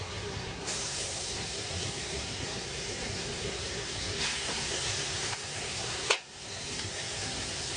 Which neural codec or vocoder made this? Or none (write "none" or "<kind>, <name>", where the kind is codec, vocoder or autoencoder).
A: codec, SNAC